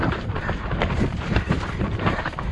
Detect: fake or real fake